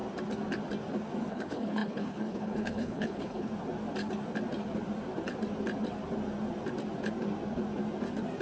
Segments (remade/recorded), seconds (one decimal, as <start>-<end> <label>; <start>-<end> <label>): 0.0-1.3 recorded; 1.3-3.5 remade; 3.5-8.4 recorded